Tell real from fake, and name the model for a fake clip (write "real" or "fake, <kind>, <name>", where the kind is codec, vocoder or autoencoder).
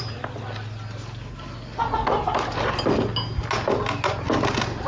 real